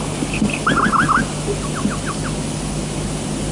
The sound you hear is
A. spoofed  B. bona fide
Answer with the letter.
B